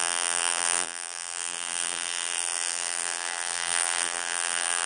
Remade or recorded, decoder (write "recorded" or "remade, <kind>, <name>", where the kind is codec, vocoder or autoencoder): remade, vocoder, BigVGAN v2